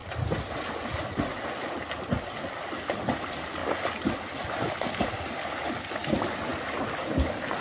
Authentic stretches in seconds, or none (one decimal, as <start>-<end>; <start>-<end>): 1.0-7.6